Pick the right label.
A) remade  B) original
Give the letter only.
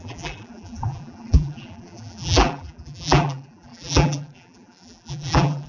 A